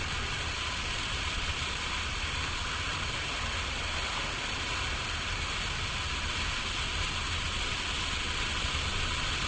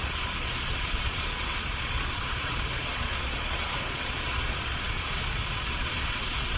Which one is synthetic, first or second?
second